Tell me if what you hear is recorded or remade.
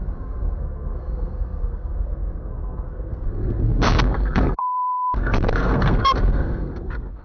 remade